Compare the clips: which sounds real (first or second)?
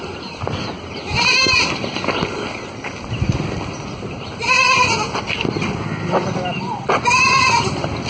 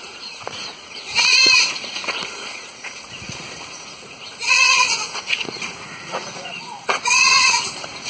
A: first